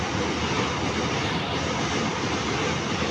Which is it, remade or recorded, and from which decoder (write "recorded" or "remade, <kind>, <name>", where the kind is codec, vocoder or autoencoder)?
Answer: recorded